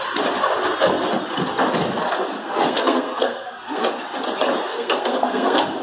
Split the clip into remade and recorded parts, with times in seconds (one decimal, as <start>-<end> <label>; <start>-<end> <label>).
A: 0.0-2.4 recorded; 2.4-3.9 remade; 3.9-4.7 recorded; 4.7-5.8 remade